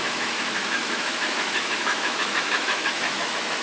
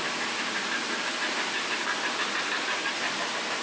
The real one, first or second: second